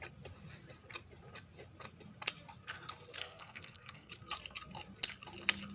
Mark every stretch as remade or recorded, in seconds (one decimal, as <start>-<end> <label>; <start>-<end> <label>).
0.0-3.2 recorded; 3.2-4.1 remade; 4.1-5.7 recorded